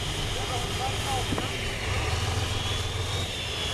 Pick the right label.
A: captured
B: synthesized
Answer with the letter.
A